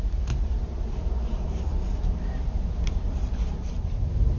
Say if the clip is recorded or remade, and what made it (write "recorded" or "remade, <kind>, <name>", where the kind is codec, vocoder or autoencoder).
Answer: remade, vocoder, BigVGAN v2